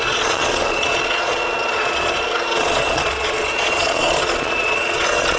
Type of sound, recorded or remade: remade